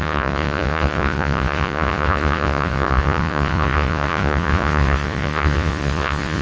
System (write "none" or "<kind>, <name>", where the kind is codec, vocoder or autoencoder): vocoder, Vocos